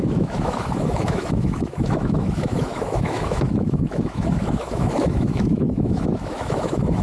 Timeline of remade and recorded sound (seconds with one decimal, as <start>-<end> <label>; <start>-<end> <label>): 0.0-7.0 remade